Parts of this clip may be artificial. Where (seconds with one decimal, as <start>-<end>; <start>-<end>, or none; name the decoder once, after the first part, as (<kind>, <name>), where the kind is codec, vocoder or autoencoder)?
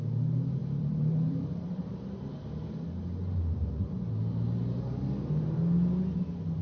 0.6-2.3 (vocoder, BigVGAN v2)